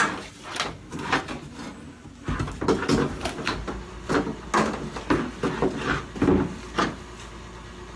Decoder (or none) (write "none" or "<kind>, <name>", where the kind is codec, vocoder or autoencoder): none